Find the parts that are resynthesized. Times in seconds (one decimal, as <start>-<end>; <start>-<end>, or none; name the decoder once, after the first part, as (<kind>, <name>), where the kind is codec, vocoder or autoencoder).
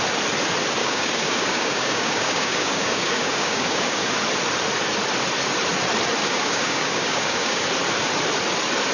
0.8-4.2 (codec, DAC); 6.2-7.6